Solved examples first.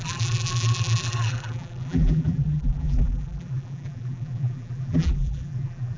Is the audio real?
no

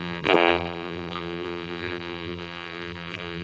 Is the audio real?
no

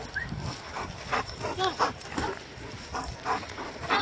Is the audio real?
yes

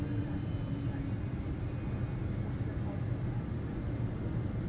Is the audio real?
yes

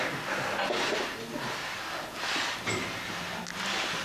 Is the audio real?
yes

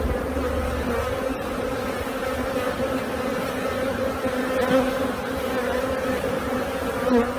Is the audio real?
yes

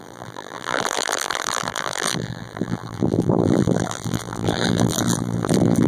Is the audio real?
no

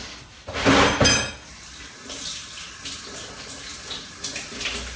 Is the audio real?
yes